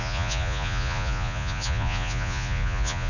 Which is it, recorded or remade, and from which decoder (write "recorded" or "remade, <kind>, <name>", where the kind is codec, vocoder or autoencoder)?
remade, vocoder, Vocos